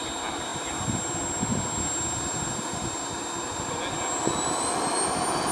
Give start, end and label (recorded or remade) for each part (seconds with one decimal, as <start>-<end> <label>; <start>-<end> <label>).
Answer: 0.0-5.5 recorded